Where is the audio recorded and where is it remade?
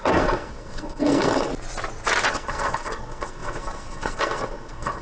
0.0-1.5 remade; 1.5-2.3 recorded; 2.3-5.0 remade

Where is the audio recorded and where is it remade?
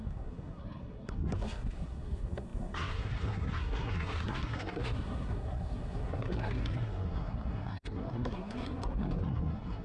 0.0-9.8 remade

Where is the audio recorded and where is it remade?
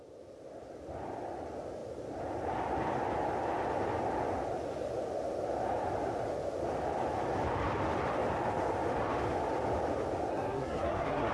0.0-10.3 recorded; 10.3-11.3 remade